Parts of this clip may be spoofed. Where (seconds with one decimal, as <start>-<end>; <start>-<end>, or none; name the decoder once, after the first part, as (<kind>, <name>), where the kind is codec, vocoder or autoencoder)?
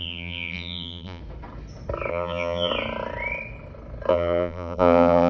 0.0-1.2 (vocoder, BigVGAN v2); 2.1-2.7; 4.1-5.3